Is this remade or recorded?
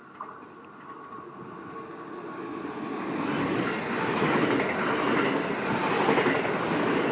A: recorded